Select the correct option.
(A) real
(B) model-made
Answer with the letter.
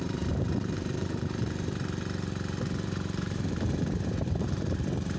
B